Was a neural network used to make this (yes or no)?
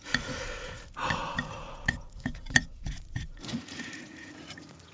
yes